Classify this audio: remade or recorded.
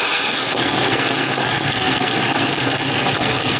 remade